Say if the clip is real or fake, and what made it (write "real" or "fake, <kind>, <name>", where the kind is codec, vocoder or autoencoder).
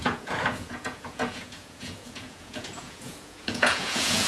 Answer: fake, vocoder, Vocos